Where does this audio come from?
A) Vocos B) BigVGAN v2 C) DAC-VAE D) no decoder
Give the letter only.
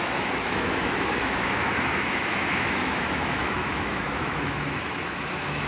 C